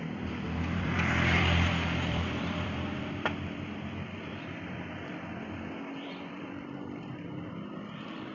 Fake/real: fake